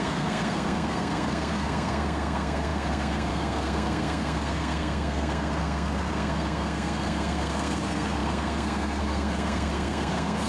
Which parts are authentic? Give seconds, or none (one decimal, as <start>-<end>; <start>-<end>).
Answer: none